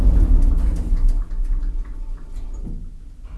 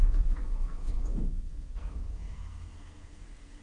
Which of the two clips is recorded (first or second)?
first